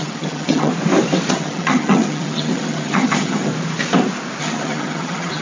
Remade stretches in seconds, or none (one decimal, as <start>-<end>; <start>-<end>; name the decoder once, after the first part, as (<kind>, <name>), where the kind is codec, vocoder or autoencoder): 0.0-0.7 (vocoder, HiFi-GAN); 1.3-3.5; 4.4-5.4